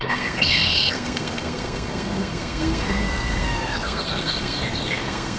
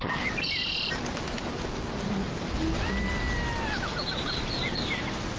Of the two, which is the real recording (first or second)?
second